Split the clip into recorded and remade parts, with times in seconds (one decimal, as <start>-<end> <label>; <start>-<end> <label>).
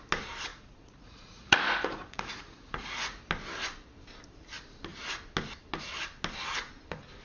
0.0-0.5 recorded; 0.5-3.2 remade; 3.2-7.2 recorded